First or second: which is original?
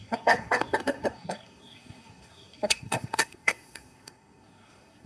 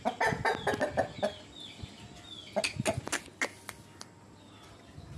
second